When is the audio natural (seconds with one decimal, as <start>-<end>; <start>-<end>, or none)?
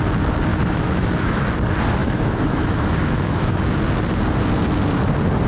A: 0.0-0.5; 1.4-2.0; 3.8-5.5